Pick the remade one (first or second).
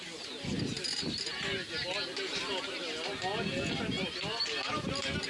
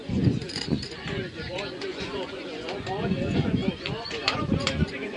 second